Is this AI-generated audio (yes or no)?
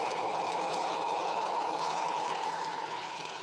yes